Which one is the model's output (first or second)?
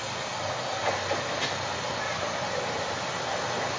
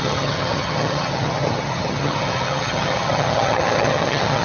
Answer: second